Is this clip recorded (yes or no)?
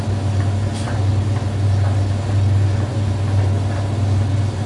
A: yes